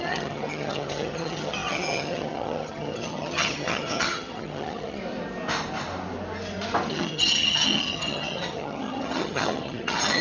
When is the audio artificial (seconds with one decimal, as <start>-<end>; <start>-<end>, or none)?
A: 0.0-5.0; 6.9-10.2